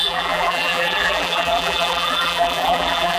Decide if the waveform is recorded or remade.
remade